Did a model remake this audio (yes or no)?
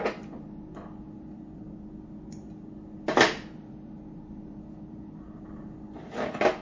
no